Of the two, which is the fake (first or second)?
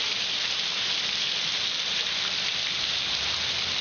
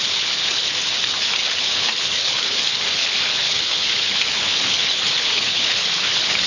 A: second